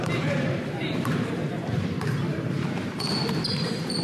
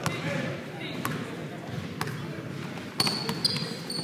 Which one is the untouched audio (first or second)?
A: second